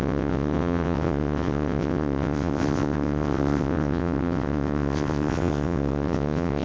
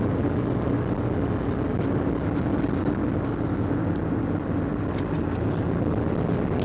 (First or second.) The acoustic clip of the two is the second